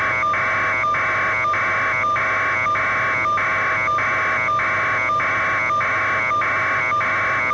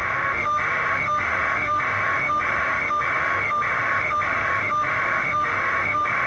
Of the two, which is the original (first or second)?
first